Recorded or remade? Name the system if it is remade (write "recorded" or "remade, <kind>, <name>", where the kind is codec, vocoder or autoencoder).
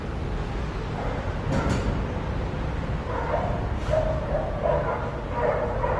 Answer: recorded